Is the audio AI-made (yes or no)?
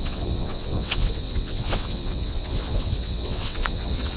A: yes